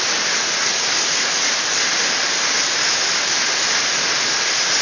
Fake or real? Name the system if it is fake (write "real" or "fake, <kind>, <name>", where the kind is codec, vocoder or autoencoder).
real